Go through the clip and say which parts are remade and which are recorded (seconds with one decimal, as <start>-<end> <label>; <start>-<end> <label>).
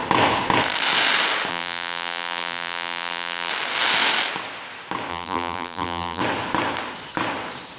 0.0-1.5 recorded; 1.5-3.5 remade; 3.5-5.1 recorded; 5.1-6.2 remade; 6.2-7.8 recorded